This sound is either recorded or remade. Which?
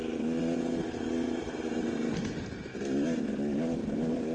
recorded